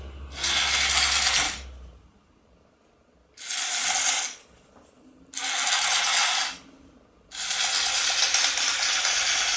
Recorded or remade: recorded